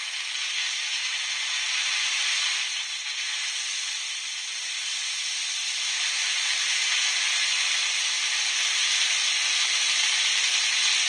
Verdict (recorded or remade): recorded